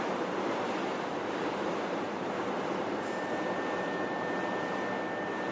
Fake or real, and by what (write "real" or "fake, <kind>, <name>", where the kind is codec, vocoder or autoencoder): real